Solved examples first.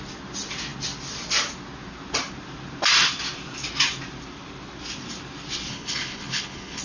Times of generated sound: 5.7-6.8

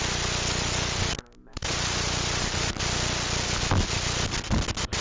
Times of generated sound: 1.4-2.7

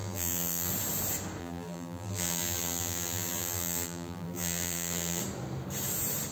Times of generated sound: 0.0-0.7; 1.4-5.2

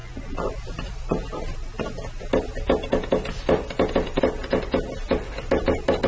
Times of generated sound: none

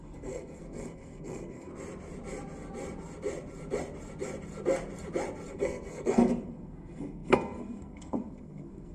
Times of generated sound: 0.0-1.7; 5.5-8.9

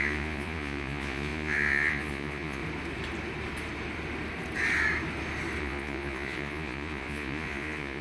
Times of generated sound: 0.0-2.6; 5.6-8.0

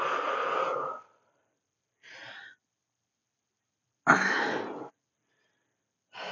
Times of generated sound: none

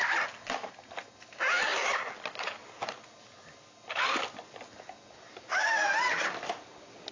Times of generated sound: none